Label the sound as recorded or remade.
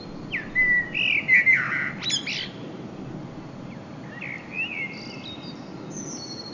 recorded